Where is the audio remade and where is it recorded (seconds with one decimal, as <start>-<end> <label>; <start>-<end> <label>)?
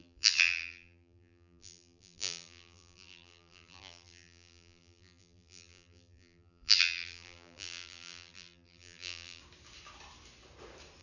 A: 0.0-9.4 remade; 9.4-11.0 recorded